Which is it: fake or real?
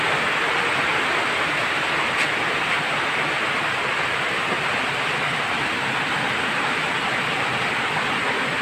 real